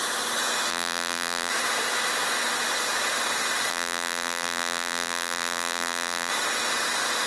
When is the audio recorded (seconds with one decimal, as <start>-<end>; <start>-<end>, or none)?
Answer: 0.0-0.7; 1.5-3.7; 6.3-7.3